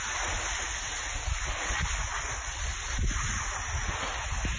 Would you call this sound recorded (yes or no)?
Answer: yes